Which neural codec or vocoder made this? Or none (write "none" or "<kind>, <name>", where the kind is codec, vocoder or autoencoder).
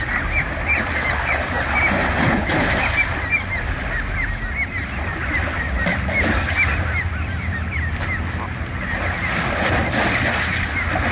none